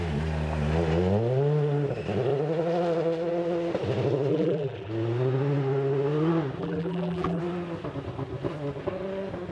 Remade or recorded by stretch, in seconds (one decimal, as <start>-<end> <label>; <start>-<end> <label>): 0.0-4.3 recorded; 4.3-4.9 remade; 4.9-6.6 recorded; 6.6-7.4 remade; 7.4-9.5 recorded